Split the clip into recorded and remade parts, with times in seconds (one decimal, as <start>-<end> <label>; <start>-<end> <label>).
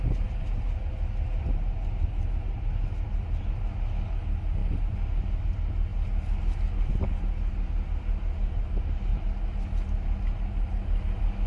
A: 0.0-11.5 recorded